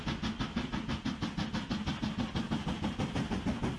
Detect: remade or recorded recorded